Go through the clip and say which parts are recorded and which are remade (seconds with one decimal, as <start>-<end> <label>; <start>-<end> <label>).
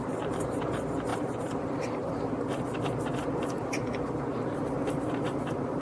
0.0-0.6 remade; 0.6-1.1 recorded; 1.1-2.2 remade; 2.2-3.6 recorded; 3.6-5.8 remade